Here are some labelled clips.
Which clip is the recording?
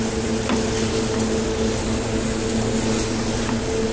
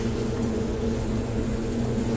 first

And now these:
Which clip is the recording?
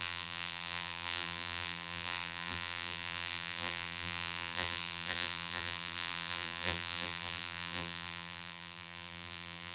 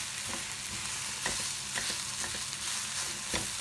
second